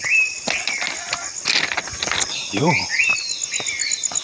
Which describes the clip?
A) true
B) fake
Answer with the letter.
A